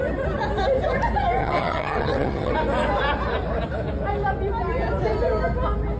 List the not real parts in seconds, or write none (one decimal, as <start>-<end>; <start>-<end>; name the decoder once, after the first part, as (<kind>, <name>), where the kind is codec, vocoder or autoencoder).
1.4-2.5 (vocoder, HiFi-GAN)